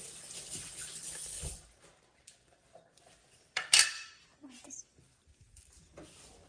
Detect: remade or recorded remade